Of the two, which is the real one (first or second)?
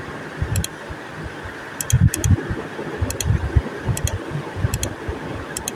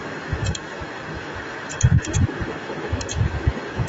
first